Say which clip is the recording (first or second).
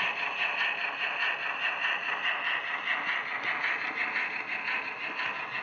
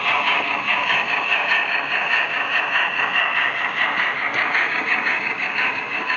first